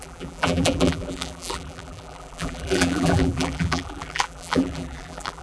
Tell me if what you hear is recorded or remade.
remade